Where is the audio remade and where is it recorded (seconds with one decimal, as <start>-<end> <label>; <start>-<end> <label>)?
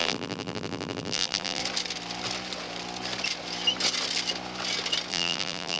0.0-1.6 remade; 1.6-5.1 recorded; 5.1-5.8 remade